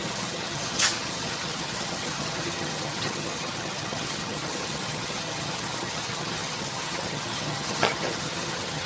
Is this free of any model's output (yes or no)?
no